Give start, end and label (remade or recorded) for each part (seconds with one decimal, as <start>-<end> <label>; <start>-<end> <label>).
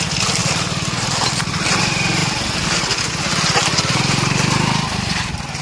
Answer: 0.0-5.6 recorded